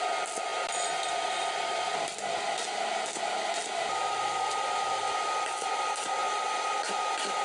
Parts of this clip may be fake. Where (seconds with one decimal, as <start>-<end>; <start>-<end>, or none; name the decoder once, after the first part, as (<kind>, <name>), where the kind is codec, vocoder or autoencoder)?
6.2-6.7 (vocoder, BigVGAN v2)